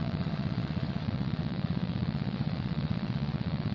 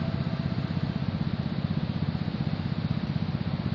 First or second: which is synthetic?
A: first